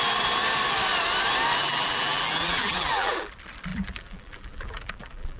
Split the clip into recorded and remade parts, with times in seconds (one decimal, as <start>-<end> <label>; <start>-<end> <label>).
0.0-1.6 recorded; 1.6-3.3 remade; 3.3-3.7 recorded; 3.7-5.4 remade